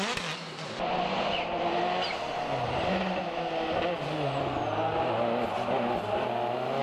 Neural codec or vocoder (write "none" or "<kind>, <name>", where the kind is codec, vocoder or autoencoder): none